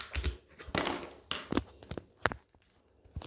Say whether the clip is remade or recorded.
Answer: recorded